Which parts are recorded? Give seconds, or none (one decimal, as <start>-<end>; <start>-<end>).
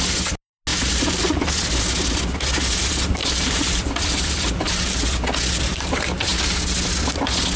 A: 0.0-0.7; 1.2-3.2; 5.0-7.6